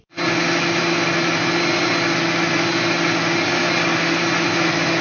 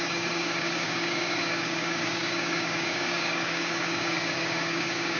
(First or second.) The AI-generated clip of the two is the second